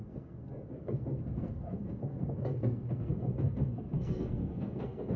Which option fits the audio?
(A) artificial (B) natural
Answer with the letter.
A